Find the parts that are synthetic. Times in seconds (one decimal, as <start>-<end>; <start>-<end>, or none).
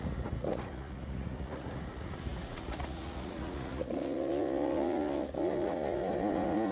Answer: 0.0-6.7